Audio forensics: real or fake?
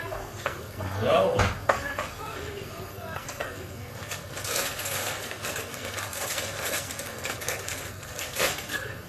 fake